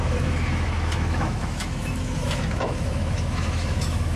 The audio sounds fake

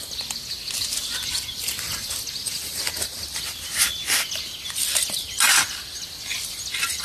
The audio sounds real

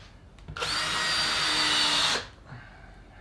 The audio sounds real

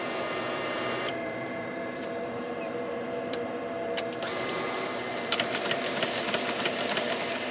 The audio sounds fake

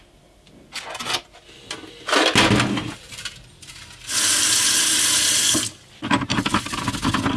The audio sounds real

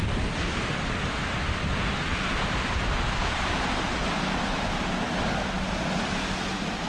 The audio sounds real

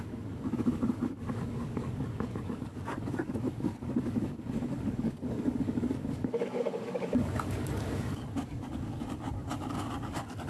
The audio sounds fake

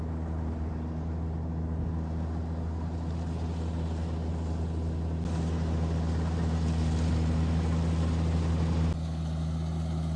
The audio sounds real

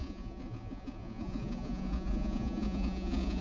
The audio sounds fake